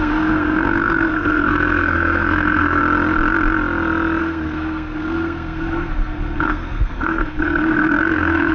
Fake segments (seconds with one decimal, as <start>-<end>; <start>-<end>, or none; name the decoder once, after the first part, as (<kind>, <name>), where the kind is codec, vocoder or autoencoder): 0.0-2.8 (codec, SNAC); 4.2-8.5